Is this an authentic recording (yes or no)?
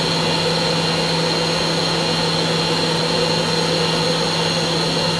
yes